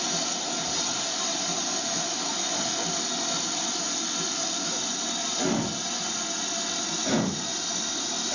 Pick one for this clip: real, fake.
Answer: real